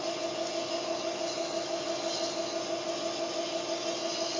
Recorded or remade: recorded